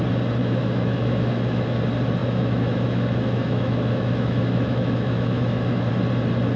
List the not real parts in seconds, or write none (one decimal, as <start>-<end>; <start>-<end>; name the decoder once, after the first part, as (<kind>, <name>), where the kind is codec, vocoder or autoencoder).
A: 0.4-1.8 (autoencoder, DAC-VAE); 2.2-5.9

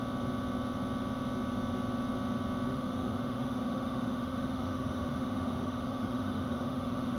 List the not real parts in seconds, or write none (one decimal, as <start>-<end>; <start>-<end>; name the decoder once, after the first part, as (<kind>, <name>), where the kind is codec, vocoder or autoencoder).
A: 2.7-7.2 (autoencoder, DAC-VAE)